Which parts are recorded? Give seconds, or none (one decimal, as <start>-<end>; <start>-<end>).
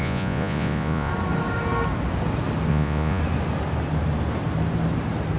1.1-2.7; 3.2-5.4